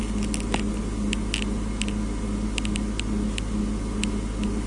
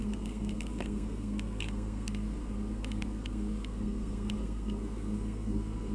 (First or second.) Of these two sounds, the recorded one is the first